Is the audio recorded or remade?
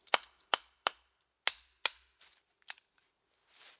recorded